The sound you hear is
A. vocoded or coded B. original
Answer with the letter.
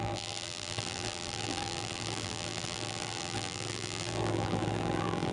A